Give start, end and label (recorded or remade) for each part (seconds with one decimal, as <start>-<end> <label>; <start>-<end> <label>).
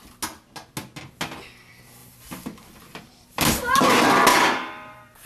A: 0.0-2.0 recorded; 2.0-3.5 remade; 3.5-4.3 recorded; 4.3-5.3 remade